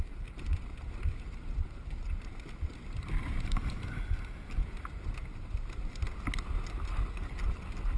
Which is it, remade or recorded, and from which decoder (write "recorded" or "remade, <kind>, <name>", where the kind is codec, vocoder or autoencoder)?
recorded